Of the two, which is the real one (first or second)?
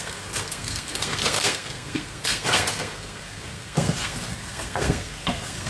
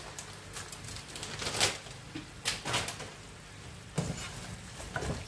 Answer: second